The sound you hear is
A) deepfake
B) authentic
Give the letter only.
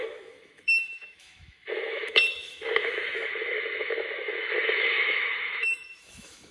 A